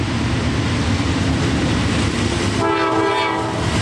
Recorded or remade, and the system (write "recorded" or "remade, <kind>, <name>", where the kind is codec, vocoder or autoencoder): recorded